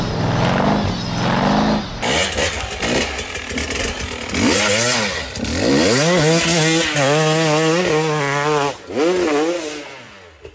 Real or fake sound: real